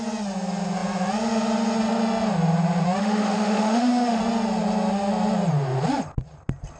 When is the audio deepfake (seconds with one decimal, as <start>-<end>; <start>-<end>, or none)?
3.0-4.2